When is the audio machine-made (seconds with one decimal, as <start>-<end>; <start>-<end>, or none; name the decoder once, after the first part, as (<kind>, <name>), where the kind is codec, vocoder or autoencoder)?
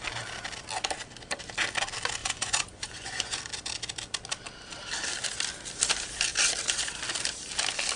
2.2-3.4 (vocoder, Vocos)